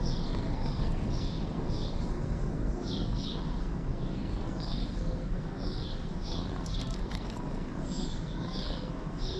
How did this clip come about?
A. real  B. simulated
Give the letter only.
B